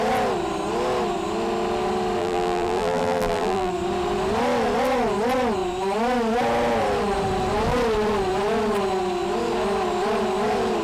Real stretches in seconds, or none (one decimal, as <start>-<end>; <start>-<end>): 0.0-2.2; 3.7-10.8